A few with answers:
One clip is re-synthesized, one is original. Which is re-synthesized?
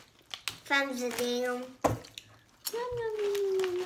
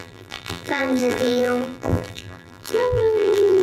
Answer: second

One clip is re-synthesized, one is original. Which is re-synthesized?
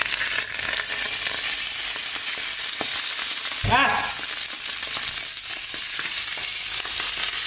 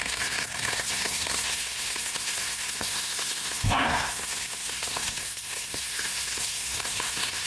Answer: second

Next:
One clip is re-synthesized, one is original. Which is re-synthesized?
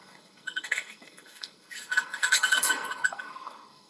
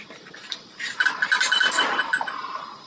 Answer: first